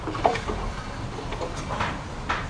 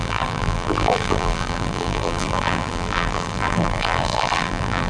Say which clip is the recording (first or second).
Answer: first